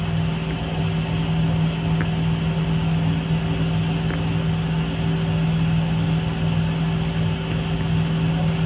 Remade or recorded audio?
recorded